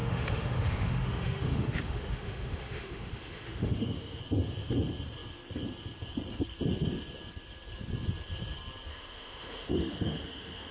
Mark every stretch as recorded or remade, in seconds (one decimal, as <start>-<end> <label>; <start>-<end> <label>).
0.0-4.2 remade; 4.2-8.9 recorded; 8.9-10.7 remade